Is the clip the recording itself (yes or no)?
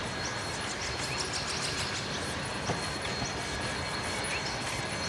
yes